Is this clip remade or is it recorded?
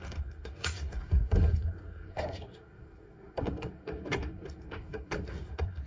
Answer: remade